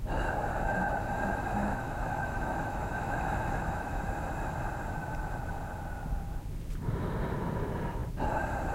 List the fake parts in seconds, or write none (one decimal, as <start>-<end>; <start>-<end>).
1.6-4.0

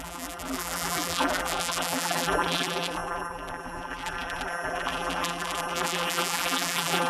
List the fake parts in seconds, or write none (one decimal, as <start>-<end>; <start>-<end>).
0.0-7.1

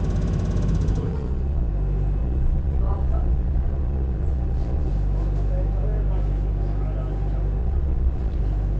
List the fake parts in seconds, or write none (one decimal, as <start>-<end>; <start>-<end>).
1.1-1.7; 2.2-4.9; 7.6-8.4

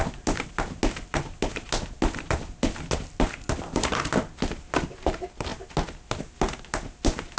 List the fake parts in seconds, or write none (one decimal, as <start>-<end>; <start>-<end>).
none

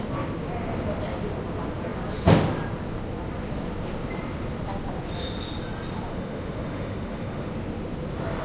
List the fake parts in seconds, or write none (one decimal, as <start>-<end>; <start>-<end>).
6.1-7.5

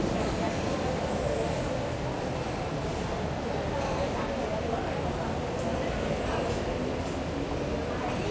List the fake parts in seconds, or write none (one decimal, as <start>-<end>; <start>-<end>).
none

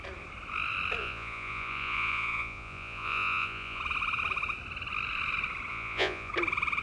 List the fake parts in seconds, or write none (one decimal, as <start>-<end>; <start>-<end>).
1.0-3.8; 5.7-6.3

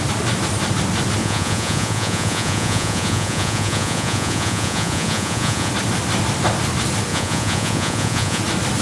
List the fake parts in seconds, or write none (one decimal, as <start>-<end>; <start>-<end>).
1.2-5.7; 7.1-8.4